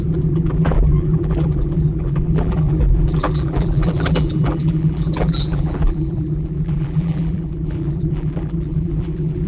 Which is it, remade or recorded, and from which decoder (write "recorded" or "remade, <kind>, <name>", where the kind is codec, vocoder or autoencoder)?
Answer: remade, vocoder, BigVGAN v2